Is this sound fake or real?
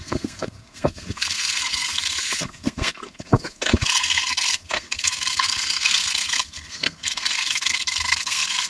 fake